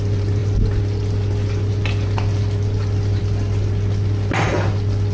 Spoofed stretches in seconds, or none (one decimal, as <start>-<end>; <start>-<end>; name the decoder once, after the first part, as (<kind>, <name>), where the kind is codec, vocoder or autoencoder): none